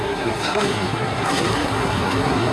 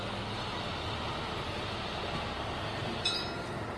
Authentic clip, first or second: second